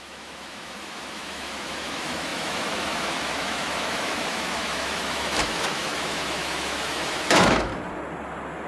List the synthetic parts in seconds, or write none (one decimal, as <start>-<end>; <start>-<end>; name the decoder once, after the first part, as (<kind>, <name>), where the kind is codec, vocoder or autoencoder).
0.0-7.7 (autoencoder, DAC-VAE)